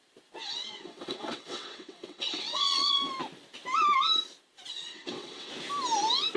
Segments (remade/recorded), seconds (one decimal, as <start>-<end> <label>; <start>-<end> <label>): 0.0-0.4 recorded; 0.4-2.9 remade; 2.9-4.7 recorded; 4.7-5.5 remade; 5.5-6.4 recorded